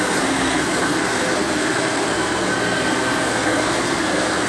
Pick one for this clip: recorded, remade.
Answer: remade